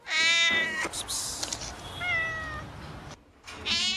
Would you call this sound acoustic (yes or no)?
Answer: yes